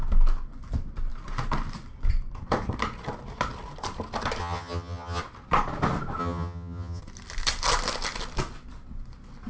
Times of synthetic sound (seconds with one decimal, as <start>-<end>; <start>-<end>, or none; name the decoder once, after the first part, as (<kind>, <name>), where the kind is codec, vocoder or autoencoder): 4.4-5.2 (vocoder, HiFi-GAN); 6.2-7.0